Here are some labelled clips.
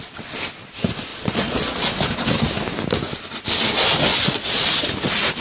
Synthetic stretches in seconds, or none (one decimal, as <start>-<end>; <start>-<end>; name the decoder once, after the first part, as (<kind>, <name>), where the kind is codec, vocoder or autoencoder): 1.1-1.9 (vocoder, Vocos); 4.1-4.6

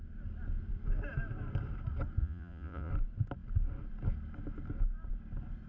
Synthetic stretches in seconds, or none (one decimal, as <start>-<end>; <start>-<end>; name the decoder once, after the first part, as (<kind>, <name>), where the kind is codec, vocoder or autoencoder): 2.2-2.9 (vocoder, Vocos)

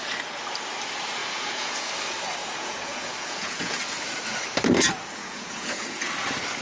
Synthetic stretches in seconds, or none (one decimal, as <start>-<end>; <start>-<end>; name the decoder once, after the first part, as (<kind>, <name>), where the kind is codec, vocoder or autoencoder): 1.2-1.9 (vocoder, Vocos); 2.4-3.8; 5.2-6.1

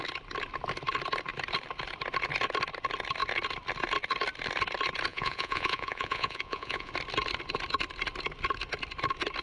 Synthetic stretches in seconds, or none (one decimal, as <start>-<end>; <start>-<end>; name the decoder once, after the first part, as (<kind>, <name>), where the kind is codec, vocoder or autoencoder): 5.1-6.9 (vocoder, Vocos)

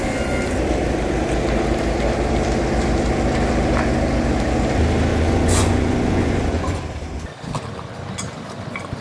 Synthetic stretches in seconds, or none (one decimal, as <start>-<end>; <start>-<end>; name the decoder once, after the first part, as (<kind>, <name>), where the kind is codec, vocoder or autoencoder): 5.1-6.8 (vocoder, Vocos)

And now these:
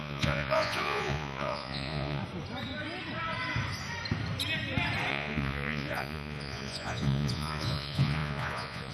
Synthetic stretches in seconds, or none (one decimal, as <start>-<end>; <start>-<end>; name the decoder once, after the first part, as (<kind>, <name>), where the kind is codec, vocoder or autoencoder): 0.0-2.2 (vocoder, Vocos); 5.1-8.9

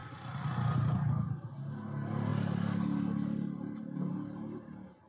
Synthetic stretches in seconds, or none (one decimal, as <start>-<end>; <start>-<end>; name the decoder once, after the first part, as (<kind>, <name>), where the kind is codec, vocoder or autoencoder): none

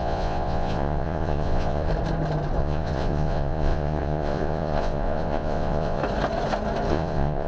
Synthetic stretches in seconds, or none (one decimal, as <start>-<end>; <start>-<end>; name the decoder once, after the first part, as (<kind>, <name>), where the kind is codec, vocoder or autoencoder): 0.0-1.9 (vocoder, Vocos); 2.6-6.0; 6.9-7.5